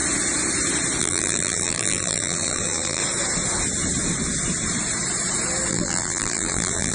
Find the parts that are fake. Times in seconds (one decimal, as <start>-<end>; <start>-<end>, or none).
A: 1.0-3.0; 5.7-6.9